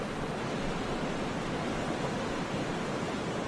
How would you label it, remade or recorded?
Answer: recorded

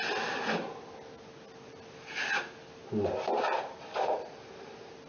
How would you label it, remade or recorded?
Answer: recorded